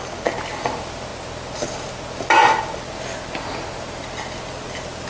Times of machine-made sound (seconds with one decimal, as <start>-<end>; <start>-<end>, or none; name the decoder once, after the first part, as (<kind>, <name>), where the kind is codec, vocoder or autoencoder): none